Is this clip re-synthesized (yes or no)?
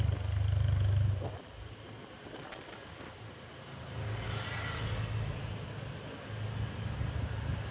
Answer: no